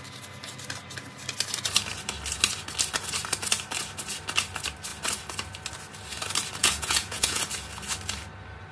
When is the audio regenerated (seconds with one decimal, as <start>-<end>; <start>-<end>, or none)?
6.6-7.4